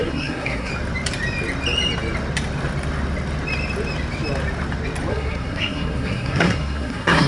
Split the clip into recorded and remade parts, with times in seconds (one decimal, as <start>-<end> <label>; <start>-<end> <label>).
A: 0.0-0.7 remade; 0.7-5.1 recorded; 5.1-7.3 remade